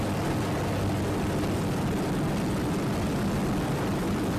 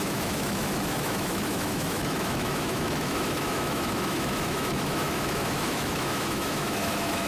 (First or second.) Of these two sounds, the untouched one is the first